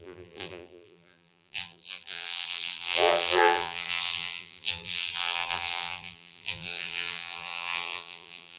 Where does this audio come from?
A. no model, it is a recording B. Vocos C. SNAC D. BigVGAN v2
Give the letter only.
D